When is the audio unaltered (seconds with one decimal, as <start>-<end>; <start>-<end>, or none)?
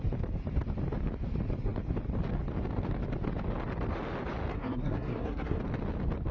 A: 0.0-4.5; 5.6-6.3